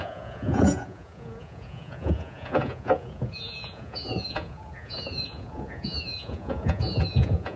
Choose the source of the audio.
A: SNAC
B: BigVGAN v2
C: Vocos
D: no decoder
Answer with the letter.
C